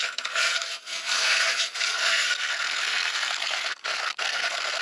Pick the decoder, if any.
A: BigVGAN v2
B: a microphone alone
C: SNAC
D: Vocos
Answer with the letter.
C